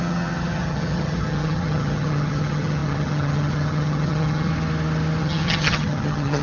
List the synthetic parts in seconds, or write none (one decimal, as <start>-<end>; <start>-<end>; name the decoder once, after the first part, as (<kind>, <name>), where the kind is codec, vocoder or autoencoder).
0.0-4.5 (vocoder, HiFi-GAN); 5.2-6.4